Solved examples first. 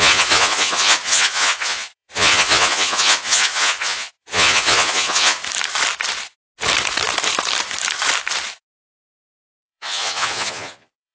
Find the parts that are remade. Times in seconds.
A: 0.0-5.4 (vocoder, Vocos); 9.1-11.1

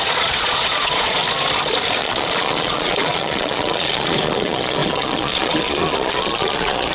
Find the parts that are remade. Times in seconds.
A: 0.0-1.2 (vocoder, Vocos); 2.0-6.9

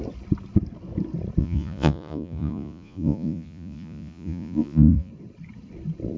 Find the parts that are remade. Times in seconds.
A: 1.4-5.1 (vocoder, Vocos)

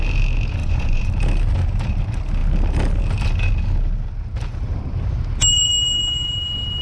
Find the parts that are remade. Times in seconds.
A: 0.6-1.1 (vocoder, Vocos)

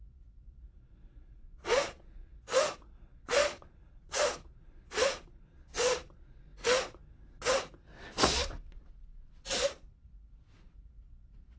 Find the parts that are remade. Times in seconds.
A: 0.0-6.5 (vocoder, Vocos); 7.8-11.6

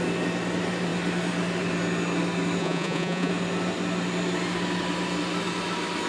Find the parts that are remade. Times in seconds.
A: 2.6-3.3 (vocoder, Vocos)

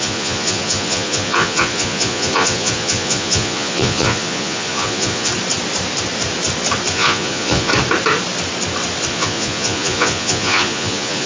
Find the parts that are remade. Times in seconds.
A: 0.0-5.3 (vocoder, Vocos); 6.9-7.7; 9.1-11.3